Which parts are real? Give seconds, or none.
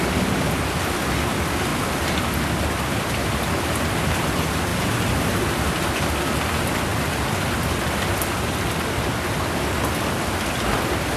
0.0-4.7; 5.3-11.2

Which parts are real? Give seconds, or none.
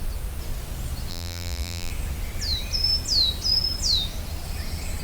0.0-1.1; 1.9-5.0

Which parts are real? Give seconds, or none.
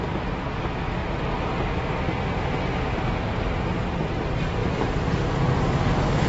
1.0-3.9; 4.6-5.5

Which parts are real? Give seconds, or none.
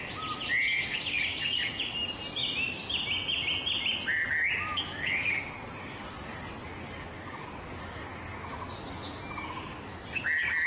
0.0-10.7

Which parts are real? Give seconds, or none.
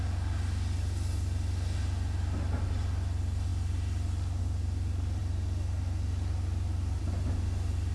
0.0-7.9